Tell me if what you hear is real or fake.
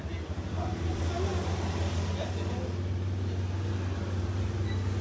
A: real